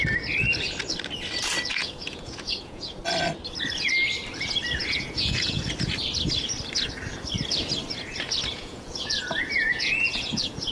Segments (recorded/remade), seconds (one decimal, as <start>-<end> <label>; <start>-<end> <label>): 0.0-1.7 recorded; 1.7-3.0 remade; 3.0-4.8 recorded; 4.8-5.6 remade; 5.6-8.5 recorded; 8.5-10.7 remade